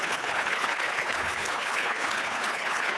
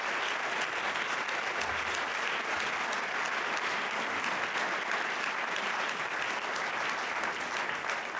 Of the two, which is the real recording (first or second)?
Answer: second